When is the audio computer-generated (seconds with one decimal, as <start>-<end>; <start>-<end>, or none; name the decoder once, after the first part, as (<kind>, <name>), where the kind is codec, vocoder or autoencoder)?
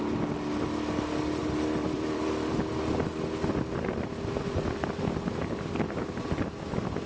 1.4-2.8 (vocoder, BigVGAN v2)